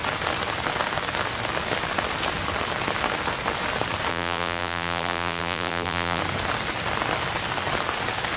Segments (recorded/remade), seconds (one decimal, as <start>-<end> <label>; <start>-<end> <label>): 0.0-4.1 recorded; 4.1-6.2 remade; 6.2-8.4 recorded